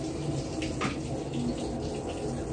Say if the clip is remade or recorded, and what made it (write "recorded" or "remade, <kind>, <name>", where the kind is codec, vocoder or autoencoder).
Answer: recorded